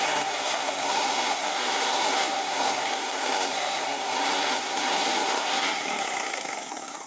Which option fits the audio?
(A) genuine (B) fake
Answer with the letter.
B